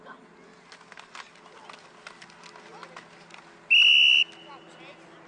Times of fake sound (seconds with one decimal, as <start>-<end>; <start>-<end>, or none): none

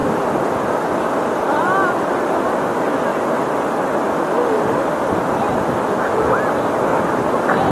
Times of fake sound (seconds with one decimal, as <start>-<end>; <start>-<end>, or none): none

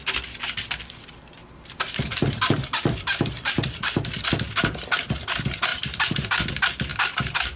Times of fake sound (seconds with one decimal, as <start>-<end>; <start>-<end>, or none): 1.4-4.3; 6.9-7.6

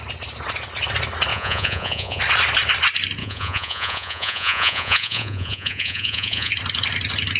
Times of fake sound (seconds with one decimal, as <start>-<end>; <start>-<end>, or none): 1.3-2.2; 3.2-6.5

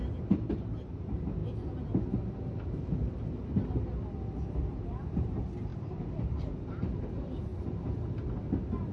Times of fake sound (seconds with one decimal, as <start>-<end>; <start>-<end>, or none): 0.0-1.4; 4.7-7.5

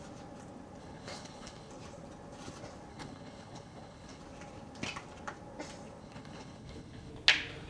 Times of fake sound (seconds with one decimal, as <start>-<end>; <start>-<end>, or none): 0.8-1.7; 2.9-4.2; 6.0-7.1

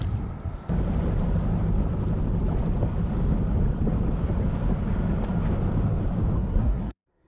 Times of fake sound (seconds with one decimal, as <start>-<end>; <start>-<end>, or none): 6.4-7.3